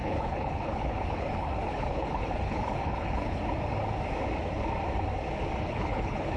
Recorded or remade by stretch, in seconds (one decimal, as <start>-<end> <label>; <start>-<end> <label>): 0.0-3.4 remade; 3.4-5.6 recorded; 5.6-6.4 remade